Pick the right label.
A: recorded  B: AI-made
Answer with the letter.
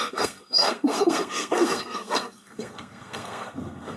B